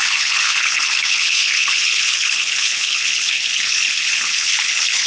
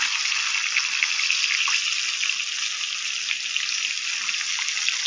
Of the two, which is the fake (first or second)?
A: first